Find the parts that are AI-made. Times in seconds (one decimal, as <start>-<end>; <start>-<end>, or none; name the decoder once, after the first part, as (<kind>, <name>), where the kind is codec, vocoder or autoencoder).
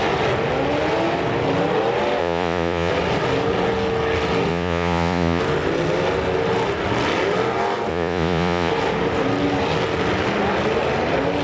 2.2-2.9 (vocoder, Vocos); 4.5-5.4; 7.9-8.7